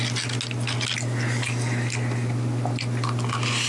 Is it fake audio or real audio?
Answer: real